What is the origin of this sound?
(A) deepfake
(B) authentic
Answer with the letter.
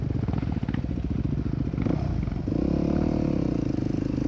B